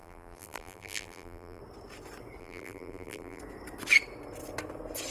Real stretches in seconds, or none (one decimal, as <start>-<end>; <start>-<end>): 1.6-2.4; 3.4-5.1